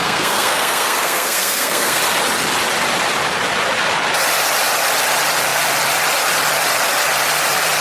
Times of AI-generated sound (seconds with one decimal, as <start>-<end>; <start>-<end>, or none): 0.0-2.0